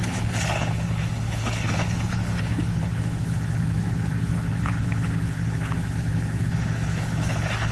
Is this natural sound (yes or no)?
no